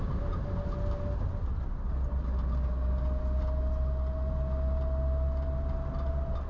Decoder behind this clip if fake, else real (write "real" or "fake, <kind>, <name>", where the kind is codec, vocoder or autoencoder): real